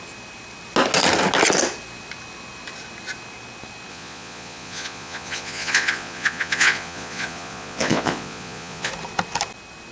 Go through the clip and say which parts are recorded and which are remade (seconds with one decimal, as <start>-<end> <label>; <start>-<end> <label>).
0.0-3.9 recorded; 3.9-8.9 remade; 8.9-9.9 recorded